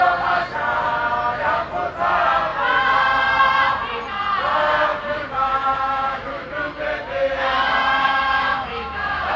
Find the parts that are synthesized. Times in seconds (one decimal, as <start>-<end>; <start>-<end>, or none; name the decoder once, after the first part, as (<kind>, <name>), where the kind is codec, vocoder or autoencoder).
4.9-6.5 (autoencoder, DAC-VAE); 8.0-9.4